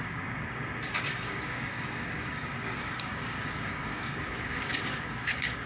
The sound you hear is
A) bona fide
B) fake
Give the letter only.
B